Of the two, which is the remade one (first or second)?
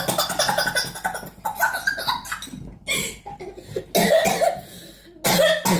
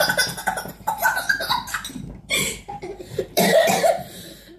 second